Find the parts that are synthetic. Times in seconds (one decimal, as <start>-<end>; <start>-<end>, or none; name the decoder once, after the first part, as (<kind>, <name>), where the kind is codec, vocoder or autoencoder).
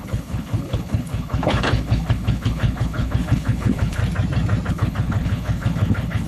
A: 0.0-4.0 (codec, HILCodec); 4.7-6.3